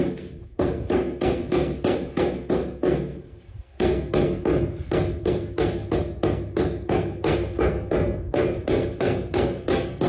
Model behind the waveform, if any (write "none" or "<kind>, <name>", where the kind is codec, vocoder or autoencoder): codec, SNAC